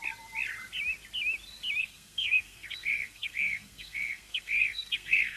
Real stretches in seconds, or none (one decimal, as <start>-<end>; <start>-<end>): 0.0-1.8